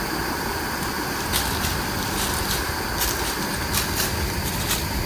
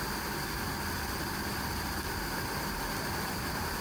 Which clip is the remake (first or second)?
first